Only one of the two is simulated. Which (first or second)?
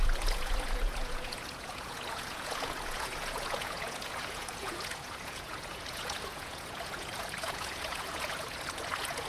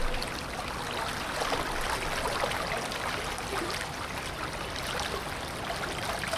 first